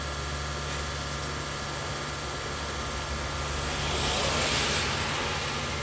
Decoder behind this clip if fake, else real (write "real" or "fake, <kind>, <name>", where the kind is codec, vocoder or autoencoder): real